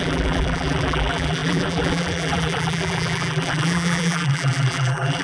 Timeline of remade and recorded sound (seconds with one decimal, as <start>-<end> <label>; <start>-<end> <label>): 0.0-5.2 remade

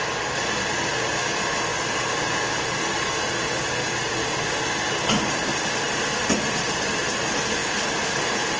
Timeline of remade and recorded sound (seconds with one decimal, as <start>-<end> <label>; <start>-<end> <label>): 0.0-5.5 recorded; 5.5-6.9 remade; 6.9-8.6 recorded

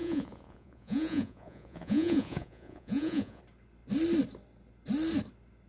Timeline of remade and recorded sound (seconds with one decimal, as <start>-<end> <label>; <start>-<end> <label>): 0.0-3.4 remade; 3.4-5.7 recorded

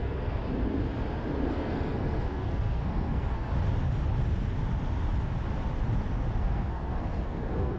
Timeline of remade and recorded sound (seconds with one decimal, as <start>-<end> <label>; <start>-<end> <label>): 0.0-0.4 remade; 0.4-1.5 recorded; 1.5-3.5 remade; 3.5-6.4 recorded; 6.4-7.8 remade

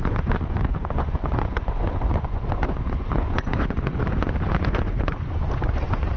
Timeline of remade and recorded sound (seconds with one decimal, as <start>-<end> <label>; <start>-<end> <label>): 0.0-6.2 remade

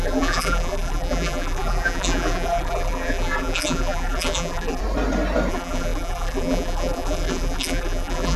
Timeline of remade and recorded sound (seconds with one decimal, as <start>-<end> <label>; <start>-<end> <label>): 0.0-4.8 remade; 4.8-5.5 recorded; 5.5-8.4 remade

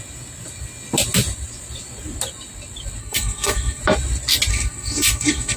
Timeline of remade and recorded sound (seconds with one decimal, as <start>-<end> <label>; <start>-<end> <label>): 0.0-3.0 recorded; 3.0-3.8 remade; 3.8-4.5 recorded; 4.5-5.6 remade